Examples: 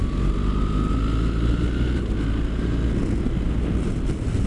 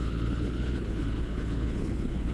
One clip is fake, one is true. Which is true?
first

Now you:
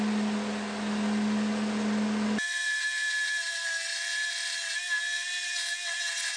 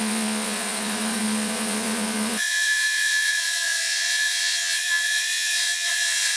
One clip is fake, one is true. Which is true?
first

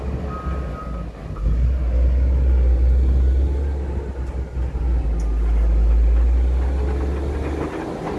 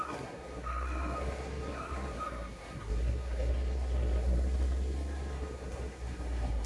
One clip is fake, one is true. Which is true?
first